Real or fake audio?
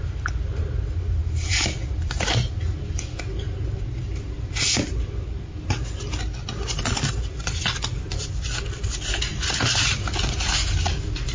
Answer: real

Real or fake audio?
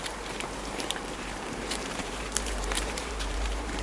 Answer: fake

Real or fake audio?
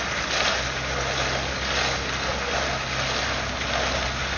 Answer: real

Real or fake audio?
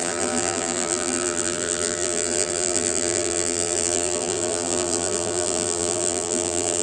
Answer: fake